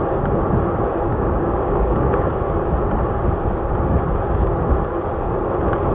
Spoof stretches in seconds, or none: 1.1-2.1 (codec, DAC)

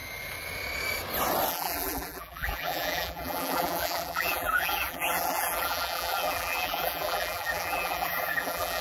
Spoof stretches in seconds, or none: 1.5-8.8 (vocoder, BigVGAN v2)

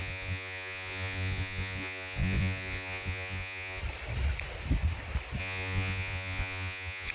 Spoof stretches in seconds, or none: 0.0-3.8 (vocoder, Vocos); 5.4-7.1

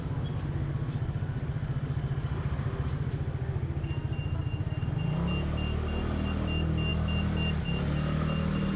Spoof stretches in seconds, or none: none

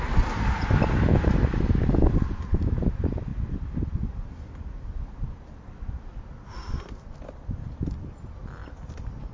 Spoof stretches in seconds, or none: none

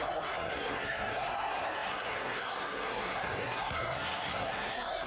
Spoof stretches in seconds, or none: 0.0-5.1 (codec, SNAC)